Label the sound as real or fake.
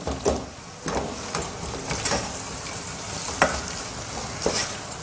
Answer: real